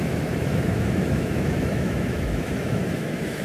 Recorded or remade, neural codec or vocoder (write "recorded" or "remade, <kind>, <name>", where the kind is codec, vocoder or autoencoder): remade, autoencoder, DAC-VAE